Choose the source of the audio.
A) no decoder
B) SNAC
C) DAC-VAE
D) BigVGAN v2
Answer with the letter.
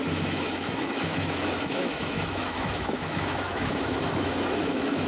C